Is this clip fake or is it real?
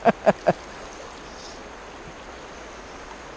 real